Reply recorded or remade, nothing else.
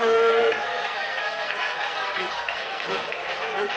remade